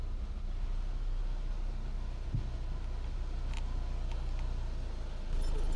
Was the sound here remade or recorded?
recorded